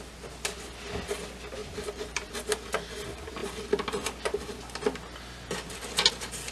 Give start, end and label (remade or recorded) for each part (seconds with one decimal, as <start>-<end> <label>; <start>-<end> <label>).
0.0-1.6 recorded; 1.6-2.3 remade; 2.3-6.5 recorded